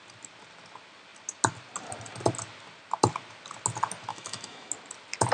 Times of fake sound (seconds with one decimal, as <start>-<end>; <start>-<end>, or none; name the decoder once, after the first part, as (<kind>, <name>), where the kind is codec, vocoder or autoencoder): 4.1-4.7 (autoencoder, DAC-VAE)